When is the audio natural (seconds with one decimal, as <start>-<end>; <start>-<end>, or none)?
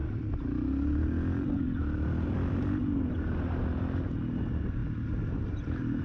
4.8-5.3